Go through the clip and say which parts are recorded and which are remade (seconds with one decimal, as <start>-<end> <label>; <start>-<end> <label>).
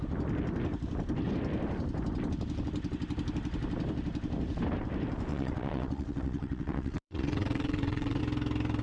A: 0.0-5.3 recorded; 5.3-8.2 remade; 8.2-8.8 recorded